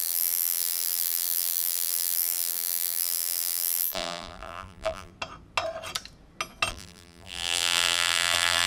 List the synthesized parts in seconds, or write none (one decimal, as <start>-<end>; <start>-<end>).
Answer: 0.0-5.1; 6.7-8.7